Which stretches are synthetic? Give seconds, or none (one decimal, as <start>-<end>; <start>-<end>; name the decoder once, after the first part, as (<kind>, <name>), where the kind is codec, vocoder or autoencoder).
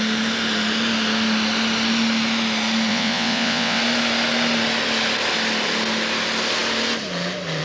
2.9-3.8 (vocoder, WaveNeXt)